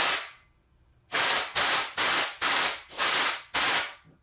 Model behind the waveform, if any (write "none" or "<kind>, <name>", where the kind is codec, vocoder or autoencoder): none